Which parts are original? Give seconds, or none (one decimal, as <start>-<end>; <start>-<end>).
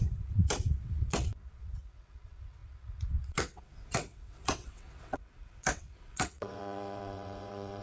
none